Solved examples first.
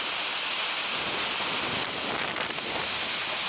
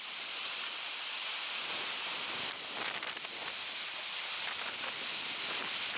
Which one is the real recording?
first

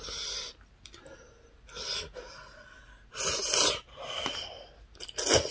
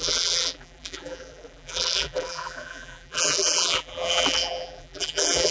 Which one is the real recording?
first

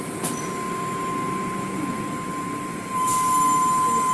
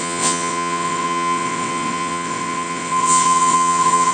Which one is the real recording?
first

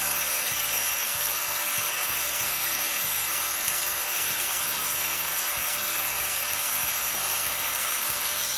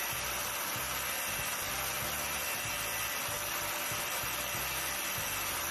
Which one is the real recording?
second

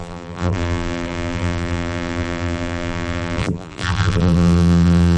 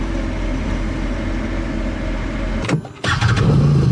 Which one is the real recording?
second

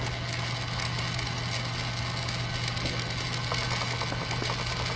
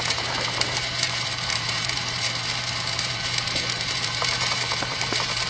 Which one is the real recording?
first